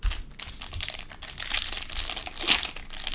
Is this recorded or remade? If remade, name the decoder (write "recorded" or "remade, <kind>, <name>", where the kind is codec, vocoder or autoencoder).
recorded